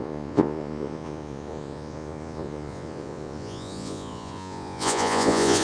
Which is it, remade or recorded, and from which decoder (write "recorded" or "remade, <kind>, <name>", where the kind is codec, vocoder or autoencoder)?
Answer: remade, vocoder, Vocos